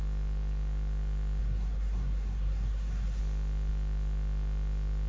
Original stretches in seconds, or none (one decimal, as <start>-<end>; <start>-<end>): 0.0-1.4; 3.2-5.1